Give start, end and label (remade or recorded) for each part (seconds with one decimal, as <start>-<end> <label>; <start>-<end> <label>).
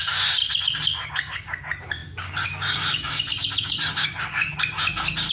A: 0.0-0.4 remade; 0.4-1.1 recorded; 1.1-4.5 remade; 4.5-5.3 recorded